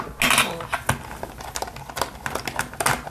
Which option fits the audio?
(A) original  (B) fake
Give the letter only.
A